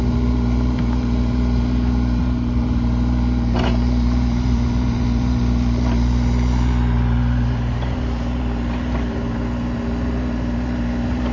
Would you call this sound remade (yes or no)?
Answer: yes